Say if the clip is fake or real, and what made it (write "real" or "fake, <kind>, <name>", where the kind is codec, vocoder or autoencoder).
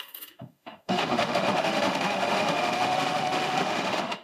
fake, autoencoder, DAC-VAE